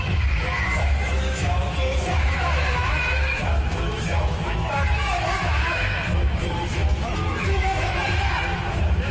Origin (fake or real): fake